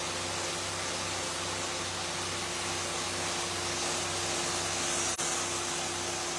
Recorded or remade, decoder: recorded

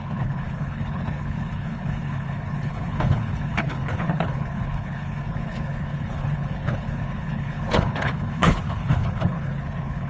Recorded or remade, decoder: remade, codec, HILCodec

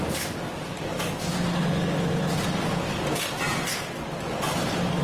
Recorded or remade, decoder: recorded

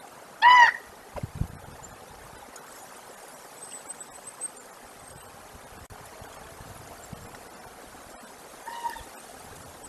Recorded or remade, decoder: recorded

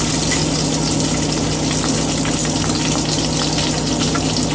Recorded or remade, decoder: recorded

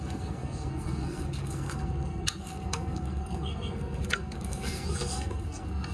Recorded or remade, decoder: remade, codec, SNAC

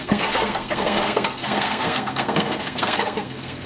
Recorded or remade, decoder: remade, codec, SNAC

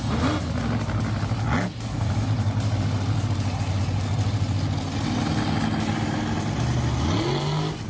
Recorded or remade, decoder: recorded